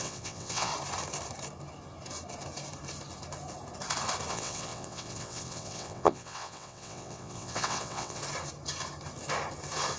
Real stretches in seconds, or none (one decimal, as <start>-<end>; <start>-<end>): 0.7-4.3; 8.2-10.0